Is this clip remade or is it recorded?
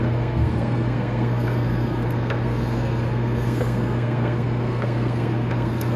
remade